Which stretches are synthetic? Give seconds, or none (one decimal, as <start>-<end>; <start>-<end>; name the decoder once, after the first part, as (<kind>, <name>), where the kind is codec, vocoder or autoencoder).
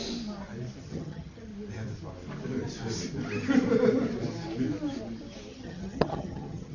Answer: 0.8-1.5 (vocoder, HiFi-GAN); 5.5-6.7